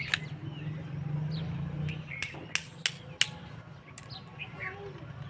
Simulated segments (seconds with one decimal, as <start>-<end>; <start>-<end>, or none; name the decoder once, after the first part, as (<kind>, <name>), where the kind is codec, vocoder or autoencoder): none